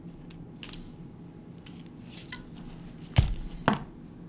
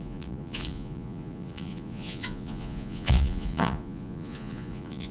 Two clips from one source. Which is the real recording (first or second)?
first